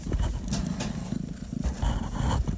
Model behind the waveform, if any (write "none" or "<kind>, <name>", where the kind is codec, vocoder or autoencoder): none